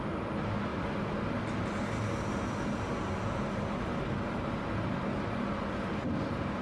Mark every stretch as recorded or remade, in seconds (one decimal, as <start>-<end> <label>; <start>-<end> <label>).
0.0-6.6 recorded